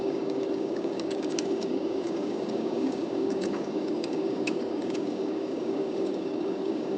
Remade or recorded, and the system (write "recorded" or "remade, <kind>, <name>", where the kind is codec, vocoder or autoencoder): remade, codec, DAC